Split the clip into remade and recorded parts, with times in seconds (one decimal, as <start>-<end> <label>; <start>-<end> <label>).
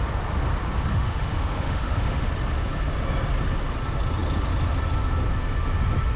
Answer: 0.0-0.9 recorded; 0.9-2.3 remade; 2.3-6.2 recorded